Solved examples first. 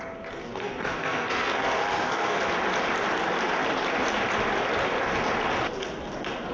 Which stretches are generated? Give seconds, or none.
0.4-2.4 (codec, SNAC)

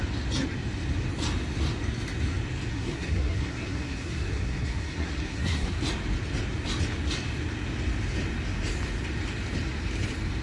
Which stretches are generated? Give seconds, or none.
2.7-5.8 (codec, SNAC)